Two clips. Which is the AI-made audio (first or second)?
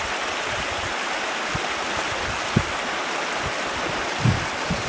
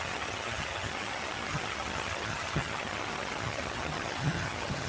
second